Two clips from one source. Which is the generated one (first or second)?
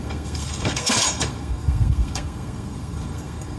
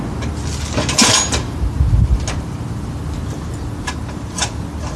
first